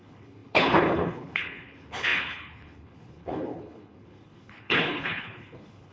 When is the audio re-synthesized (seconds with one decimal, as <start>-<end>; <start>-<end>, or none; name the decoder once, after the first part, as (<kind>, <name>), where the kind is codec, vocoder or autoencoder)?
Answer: 0.0-5.9 (codec, HILCodec)